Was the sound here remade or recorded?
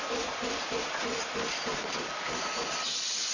recorded